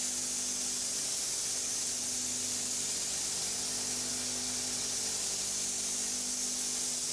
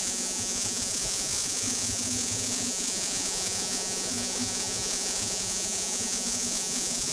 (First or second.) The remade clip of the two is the second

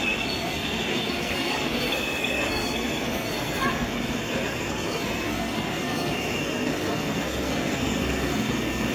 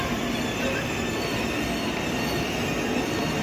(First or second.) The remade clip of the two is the first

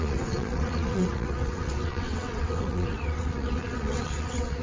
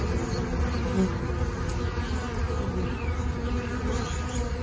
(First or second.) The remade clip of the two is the first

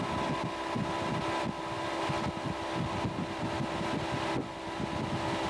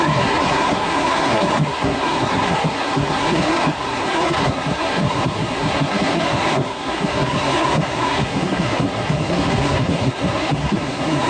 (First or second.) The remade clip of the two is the second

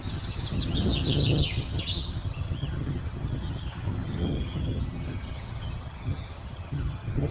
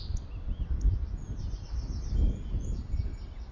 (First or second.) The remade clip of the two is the first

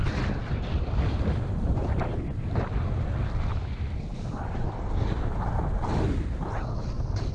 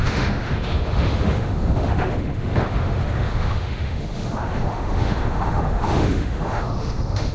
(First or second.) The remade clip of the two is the second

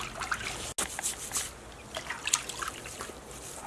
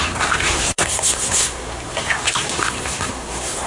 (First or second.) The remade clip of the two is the second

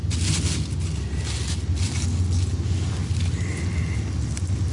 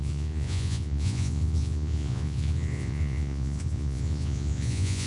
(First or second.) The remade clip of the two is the second